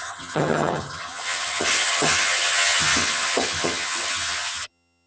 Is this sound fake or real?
fake